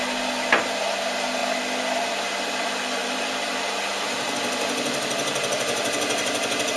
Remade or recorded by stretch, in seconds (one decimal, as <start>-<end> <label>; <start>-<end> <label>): 0.0-3.0 recorded; 3.0-4.3 remade; 4.3-6.8 recorded